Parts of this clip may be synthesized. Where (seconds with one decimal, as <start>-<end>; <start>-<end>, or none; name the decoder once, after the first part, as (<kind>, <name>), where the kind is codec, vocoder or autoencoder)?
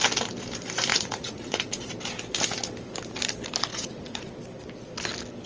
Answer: 0.9-1.9 (vocoder, Vocos); 3.7-4.3